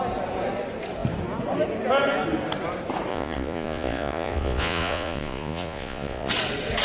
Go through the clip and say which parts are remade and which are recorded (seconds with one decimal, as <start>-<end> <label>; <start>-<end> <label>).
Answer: 0.0-3.1 recorded; 3.1-6.3 remade; 6.3-6.8 recorded